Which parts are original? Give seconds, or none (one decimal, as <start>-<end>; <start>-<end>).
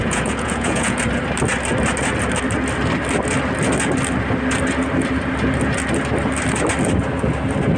1.0-7.8